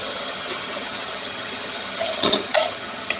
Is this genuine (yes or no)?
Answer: no